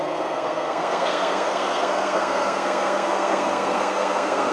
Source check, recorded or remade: remade